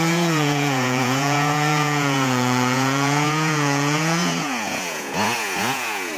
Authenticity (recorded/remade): remade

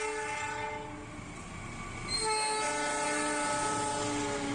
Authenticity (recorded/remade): recorded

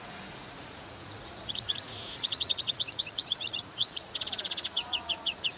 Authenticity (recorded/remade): remade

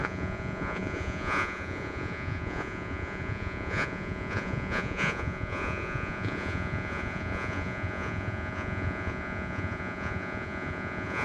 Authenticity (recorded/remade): remade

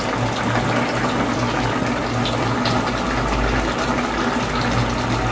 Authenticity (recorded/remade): recorded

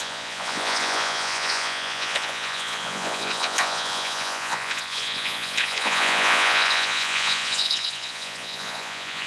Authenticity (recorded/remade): remade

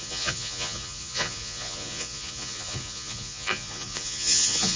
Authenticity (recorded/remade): remade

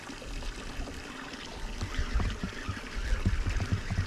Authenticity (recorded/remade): recorded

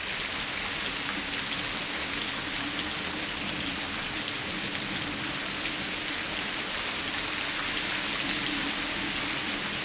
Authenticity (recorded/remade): recorded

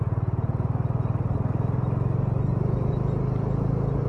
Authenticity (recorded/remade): recorded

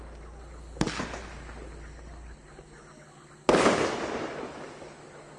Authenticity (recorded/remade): recorded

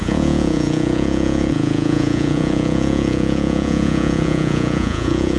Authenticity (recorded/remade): remade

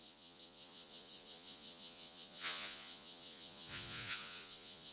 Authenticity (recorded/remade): remade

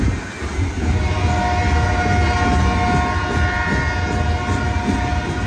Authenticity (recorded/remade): recorded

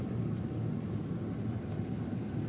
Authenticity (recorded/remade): recorded